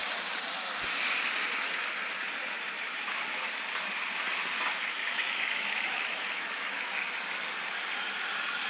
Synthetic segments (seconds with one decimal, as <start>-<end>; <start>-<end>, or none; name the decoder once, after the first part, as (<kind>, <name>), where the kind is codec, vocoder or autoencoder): 5.0-7.2 (autoencoder, DAC-VAE)